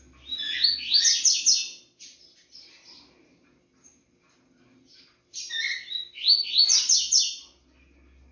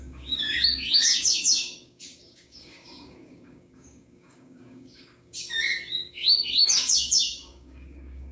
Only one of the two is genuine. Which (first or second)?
first